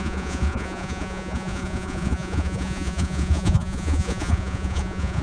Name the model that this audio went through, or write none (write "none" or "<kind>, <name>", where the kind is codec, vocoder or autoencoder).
vocoder, Vocos